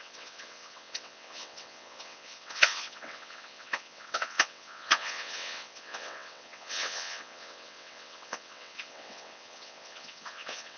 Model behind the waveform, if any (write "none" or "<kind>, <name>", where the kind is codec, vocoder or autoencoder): vocoder, WaveNeXt